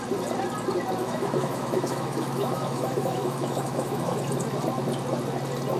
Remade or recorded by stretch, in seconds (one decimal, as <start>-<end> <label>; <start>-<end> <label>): 0.0-1.0 recorded; 1.0-4.2 remade; 4.2-5.8 recorded